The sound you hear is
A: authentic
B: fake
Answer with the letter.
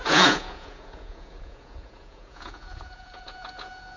B